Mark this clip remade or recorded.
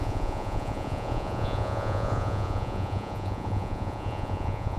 remade